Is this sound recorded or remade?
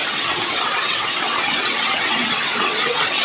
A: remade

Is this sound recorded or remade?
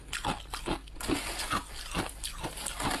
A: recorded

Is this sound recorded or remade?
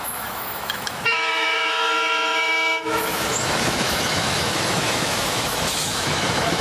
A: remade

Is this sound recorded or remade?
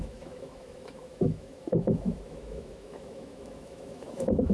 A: remade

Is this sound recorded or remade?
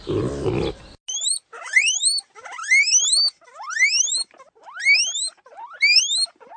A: recorded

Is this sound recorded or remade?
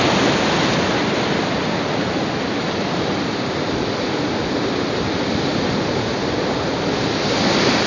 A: recorded